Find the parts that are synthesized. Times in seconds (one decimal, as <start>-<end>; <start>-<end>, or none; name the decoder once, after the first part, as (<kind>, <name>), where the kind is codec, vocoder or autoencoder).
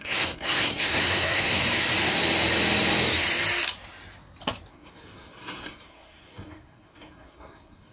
0.0-1.6 (codec, SNAC); 4.7-7.9